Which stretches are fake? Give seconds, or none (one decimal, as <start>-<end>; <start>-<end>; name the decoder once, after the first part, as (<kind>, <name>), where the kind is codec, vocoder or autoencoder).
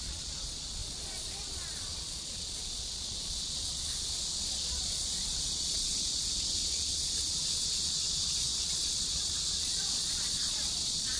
0.0-11.2 (vocoder, Vocos)